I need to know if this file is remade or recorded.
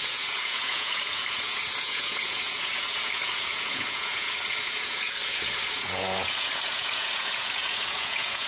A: remade